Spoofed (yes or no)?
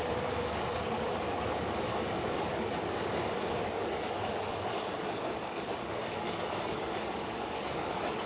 yes